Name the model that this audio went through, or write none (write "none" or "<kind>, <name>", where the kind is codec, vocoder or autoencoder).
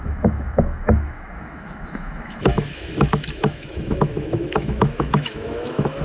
autoencoder, DAC-VAE